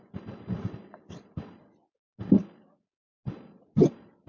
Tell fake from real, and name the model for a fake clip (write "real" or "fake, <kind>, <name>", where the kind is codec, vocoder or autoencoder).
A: real